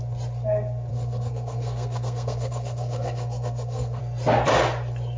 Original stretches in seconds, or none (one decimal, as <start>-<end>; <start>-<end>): 0.0-0.9; 4.0-5.2